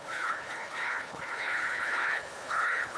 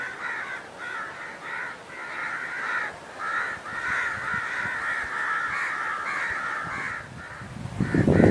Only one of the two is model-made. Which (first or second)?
first